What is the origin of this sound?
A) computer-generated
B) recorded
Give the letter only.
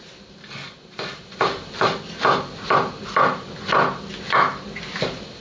B